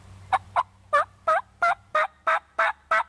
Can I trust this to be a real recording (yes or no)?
no